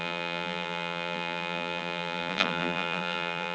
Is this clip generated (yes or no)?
yes